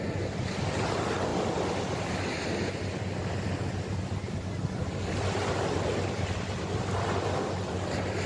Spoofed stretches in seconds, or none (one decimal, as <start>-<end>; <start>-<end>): none